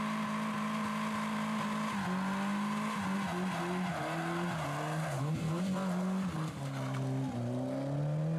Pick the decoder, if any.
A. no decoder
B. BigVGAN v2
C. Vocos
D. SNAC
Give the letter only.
A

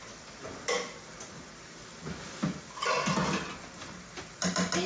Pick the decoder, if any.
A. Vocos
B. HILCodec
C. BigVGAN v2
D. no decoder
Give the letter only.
D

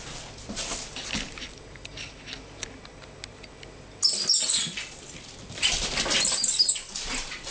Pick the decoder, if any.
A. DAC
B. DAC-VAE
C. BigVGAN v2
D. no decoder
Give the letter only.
D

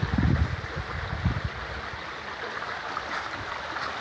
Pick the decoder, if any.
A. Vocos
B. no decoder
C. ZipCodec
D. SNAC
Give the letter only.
B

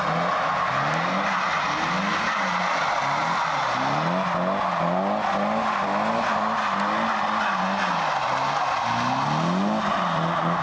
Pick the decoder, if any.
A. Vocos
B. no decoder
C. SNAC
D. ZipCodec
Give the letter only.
B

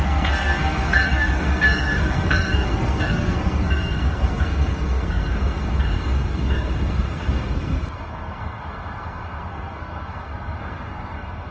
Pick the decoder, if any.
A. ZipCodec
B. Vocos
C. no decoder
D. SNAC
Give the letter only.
D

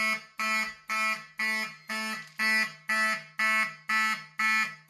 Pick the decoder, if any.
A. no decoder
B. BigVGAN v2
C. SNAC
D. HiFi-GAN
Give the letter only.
A